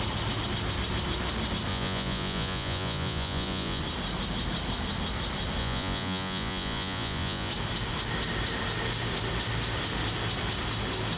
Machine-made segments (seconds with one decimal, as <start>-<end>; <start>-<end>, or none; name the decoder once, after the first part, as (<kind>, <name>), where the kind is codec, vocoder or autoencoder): 1.7-3.8 (vocoder, Vocos); 5.6-7.5